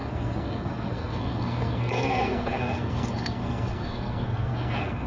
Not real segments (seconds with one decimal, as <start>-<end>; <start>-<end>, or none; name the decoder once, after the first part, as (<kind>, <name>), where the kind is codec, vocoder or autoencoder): 0.0-5.1 (codec, SNAC)